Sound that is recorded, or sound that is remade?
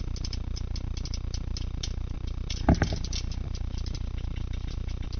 recorded